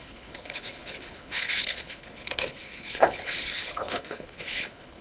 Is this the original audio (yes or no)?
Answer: no